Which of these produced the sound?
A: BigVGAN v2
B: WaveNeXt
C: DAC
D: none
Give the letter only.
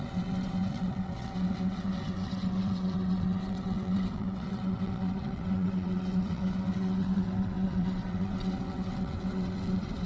B